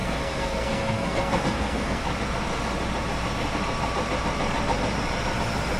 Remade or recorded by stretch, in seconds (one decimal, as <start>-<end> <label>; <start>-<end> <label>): 0.0-2.0 remade; 2.0-5.8 recorded